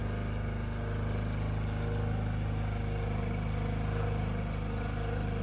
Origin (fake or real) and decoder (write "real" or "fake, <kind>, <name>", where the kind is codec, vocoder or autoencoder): real